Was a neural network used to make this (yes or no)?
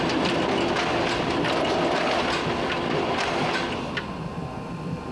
no